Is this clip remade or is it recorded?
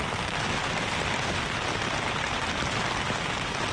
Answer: recorded